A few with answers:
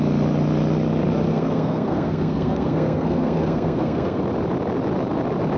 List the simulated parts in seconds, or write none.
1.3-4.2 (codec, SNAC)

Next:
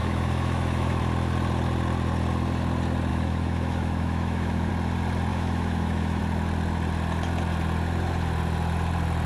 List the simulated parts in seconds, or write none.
0.0-1.0 (autoencoder, DAC-VAE); 3.1-4.7; 5.3-6.2

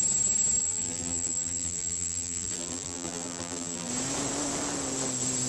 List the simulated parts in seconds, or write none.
0.6-3.9 (vocoder, BigVGAN v2)

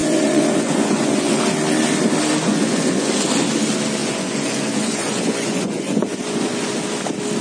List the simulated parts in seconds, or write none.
0.0-1.4 (vocoder, Vocos); 2.4-3.1; 4.0-6.7

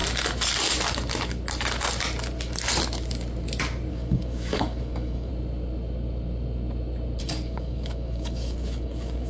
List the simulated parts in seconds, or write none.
3.9-5.3 (codec, DAC); 7.2-9.3

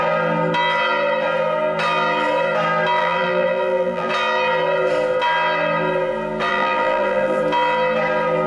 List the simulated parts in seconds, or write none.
3.0-4.1 (vocoder, BigVGAN v2); 6.5-7.4

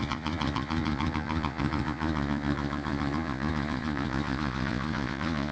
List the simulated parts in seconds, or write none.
0.0-5.5 (vocoder, Vocos)

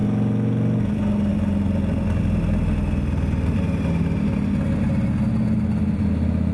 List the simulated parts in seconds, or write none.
none